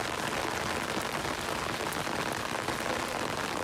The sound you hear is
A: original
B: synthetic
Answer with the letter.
A